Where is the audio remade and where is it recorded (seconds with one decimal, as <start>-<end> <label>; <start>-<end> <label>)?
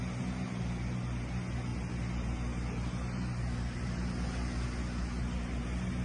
0.0-6.0 recorded